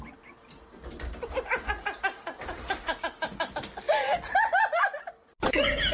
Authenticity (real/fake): real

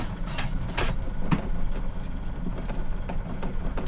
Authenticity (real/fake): real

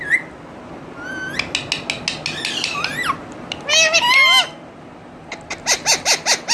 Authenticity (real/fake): real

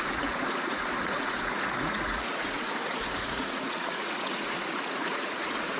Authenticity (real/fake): fake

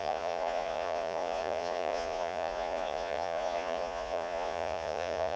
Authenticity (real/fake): fake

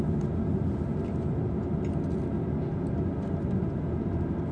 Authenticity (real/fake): real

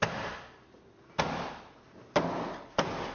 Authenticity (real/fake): real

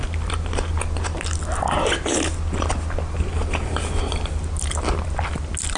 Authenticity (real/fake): real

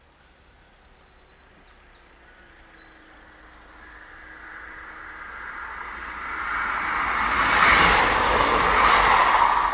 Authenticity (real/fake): real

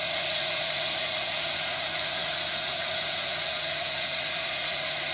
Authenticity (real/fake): fake